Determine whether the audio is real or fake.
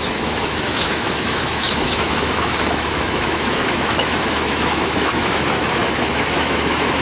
fake